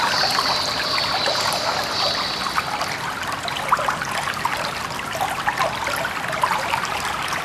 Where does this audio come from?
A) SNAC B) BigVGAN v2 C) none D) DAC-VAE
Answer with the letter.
B